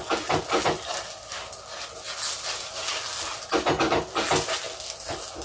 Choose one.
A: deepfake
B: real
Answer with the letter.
B